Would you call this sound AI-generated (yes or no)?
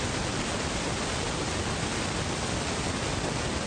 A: no